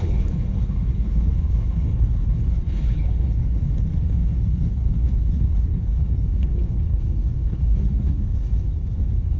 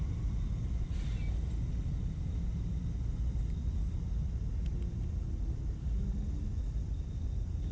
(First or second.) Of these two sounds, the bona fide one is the second